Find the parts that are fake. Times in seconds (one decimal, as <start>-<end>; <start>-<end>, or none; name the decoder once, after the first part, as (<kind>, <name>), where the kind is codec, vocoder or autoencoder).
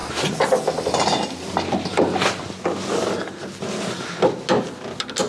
none